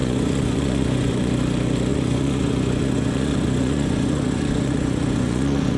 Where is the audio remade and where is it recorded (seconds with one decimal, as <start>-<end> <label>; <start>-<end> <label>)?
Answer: 0.0-1.3 remade; 1.3-1.9 recorded; 1.9-5.8 remade

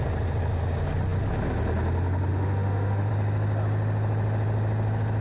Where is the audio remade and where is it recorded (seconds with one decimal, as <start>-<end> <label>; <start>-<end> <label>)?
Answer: 0.0-2.3 recorded; 2.3-3.1 remade; 3.1-5.2 recorded

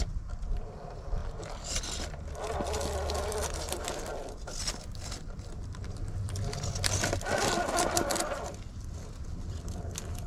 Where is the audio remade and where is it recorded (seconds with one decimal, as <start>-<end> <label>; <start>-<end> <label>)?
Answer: 0.0-10.3 recorded

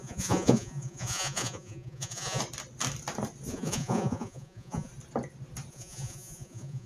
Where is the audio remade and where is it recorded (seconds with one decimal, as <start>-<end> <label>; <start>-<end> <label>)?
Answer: 0.0-2.4 remade; 2.4-3.5 recorded; 3.5-4.9 remade; 4.9-5.7 recorded; 5.7-6.9 remade

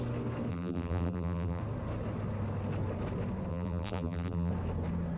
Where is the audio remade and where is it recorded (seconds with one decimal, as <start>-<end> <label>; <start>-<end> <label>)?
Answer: 0.0-0.5 recorded; 0.5-1.6 remade; 1.6-3.5 recorded; 3.5-4.5 remade; 4.5-5.2 recorded

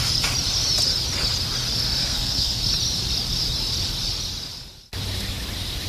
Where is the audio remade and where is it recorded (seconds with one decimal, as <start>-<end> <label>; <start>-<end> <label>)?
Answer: 0.0-2.0 recorded; 2.0-2.6 remade; 2.6-5.9 recorded

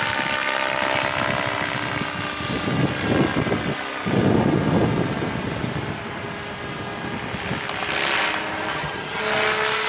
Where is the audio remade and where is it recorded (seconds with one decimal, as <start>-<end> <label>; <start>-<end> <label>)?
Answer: 0.0-8.7 recorded; 8.7-9.2 remade; 9.2-9.9 recorded